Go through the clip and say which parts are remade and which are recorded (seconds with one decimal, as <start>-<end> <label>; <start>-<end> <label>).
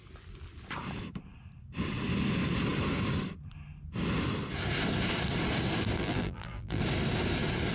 0.0-6.0 recorded; 6.0-6.8 remade; 6.8-7.7 recorded